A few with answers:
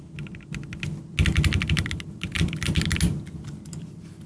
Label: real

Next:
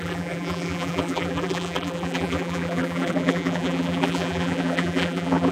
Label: fake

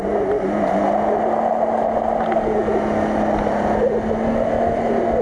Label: real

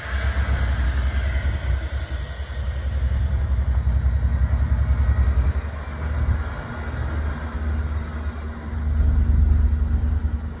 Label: real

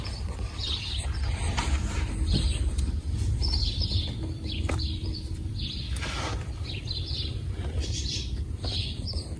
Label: fake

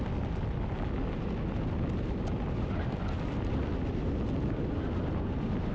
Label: real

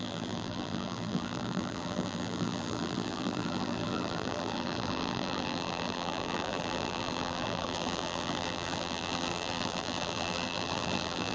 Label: fake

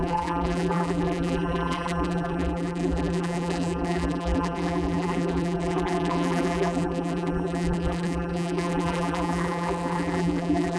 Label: fake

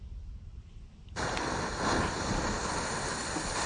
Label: real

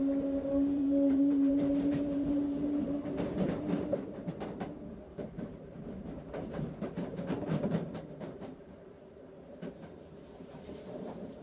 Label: fake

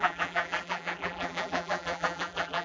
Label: fake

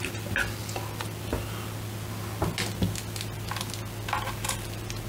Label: real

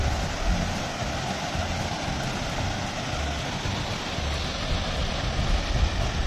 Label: real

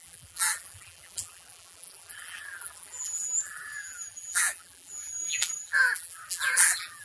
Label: fake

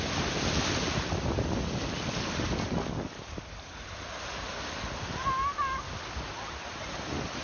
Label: real